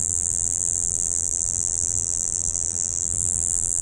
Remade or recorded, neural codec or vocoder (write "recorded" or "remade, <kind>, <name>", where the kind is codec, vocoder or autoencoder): remade, vocoder, BigVGAN v2